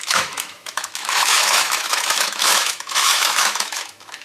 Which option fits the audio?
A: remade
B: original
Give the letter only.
A